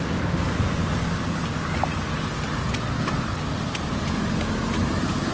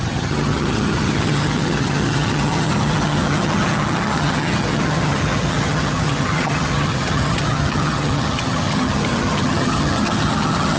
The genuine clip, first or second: first